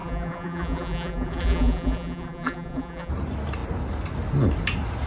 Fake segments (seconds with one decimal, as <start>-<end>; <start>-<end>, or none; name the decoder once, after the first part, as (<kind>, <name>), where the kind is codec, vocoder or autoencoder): 0.0-3.1 (vocoder, BigVGAN v2)